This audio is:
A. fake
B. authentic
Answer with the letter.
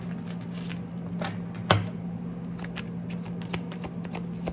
B